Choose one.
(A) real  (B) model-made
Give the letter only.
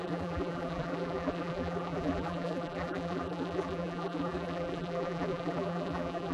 B